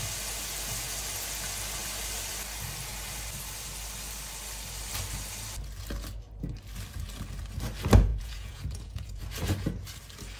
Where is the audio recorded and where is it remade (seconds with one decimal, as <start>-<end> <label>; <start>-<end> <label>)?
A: 0.0-8.1 recorded; 8.1-9.2 remade; 9.2-10.4 recorded